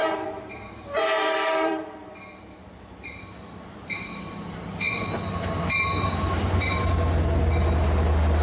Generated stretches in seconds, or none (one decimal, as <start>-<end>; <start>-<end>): 0.0-3.2; 4.1-6.9